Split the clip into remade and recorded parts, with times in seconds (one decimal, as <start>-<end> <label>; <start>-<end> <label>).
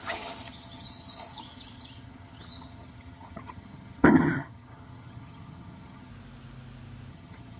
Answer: 0.0-6.1 remade; 6.1-7.1 recorded; 7.1-7.6 remade